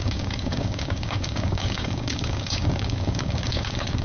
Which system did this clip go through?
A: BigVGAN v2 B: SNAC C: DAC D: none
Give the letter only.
C